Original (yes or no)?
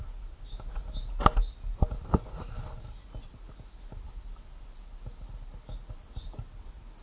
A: yes